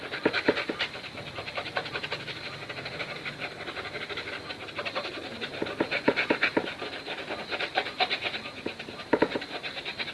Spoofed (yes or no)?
no